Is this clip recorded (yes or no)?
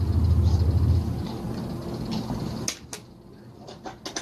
yes